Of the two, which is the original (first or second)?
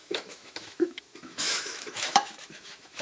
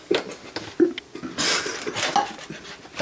second